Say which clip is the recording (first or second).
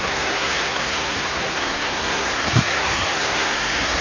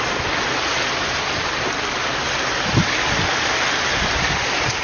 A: second